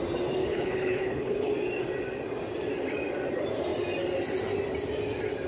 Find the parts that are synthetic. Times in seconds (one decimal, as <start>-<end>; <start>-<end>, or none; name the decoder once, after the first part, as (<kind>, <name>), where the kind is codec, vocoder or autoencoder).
0.4-1.5 (codec, HILCodec)